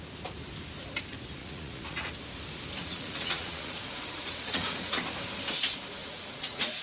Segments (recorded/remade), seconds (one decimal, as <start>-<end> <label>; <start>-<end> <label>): 0.0-1.4 recorded; 1.4-2.1 remade; 2.1-2.8 recorded; 2.8-5.0 remade; 5.0-6.0 recorded; 6.0-6.8 remade